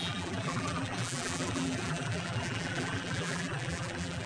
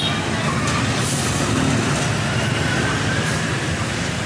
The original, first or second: second